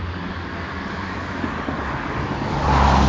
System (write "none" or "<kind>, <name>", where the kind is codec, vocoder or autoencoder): codec, DAC